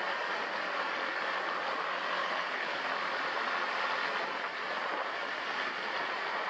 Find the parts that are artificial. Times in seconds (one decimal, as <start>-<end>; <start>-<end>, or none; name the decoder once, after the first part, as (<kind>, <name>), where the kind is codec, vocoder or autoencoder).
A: 2.2-2.8 (codec, HILCodec)